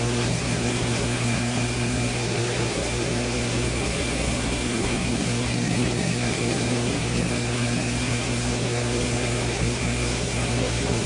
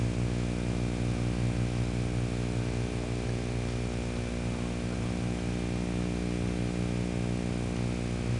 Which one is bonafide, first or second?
second